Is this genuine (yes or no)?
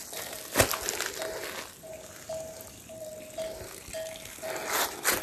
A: yes